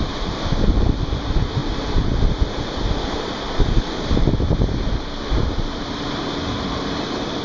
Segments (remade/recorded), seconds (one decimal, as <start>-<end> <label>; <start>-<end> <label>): 0.0-1.6 remade; 1.6-2.2 recorded; 2.2-7.4 remade